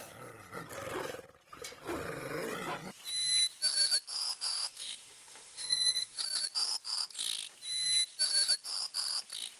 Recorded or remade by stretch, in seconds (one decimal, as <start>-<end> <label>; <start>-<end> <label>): 0.0-4.2 recorded; 4.2-6.2 remade; 6.2-9.6 recorded

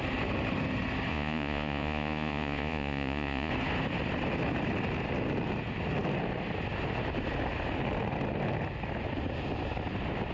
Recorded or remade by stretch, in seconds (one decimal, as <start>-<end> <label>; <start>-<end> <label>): 0.0-1.1 recorded; 1.1-3.5 remade; 3.5-10.3 recorded

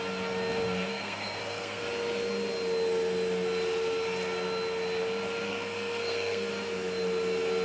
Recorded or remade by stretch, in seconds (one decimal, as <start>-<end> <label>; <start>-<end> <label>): 0.0-0.9 recorded; 0.9-1.8 remade; 1.8-5.5 recorded; 5.5-6.5 remade; 6.5-7.6 recorded

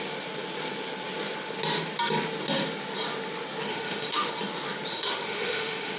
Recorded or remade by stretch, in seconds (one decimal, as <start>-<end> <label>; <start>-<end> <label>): 0.0-3.7 recorded; 3.7-4.3 remade; 4.3-4.9 recorded; 4.9-6.0 remade

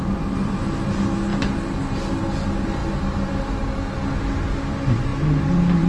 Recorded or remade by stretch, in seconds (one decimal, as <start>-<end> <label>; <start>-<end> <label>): 0.0-5.9 recorded

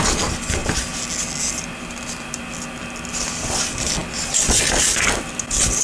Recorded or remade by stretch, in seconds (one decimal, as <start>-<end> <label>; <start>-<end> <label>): 0.0-5.8 recorded

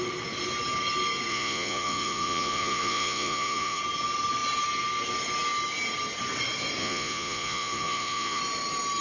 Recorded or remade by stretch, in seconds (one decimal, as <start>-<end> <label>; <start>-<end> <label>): 0.0-1.3 recorded; 1.3-3.8 remade; 3.8-6.8 recorded; 6.8-8.4 remade; 8.4-9.0 recorded

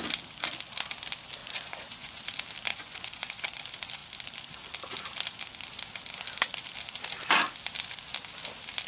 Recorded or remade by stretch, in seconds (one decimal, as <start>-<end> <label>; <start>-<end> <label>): 0.0-1.4 recorded; 1.4-2.2 remade; 2.2-2.7 recorded; 2.7-3.6 remade; 3.6-8.9 recorded